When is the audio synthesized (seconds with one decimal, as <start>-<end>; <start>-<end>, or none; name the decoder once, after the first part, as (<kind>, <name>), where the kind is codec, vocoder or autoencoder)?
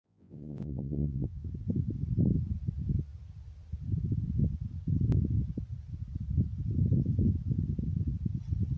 0.0-1.5 (vocoder, Vocos)